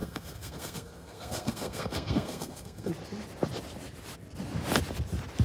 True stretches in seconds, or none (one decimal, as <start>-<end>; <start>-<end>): 2.9-5.4